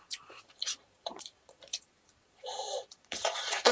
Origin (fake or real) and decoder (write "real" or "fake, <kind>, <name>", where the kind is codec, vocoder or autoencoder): fake, vocoder, Vocos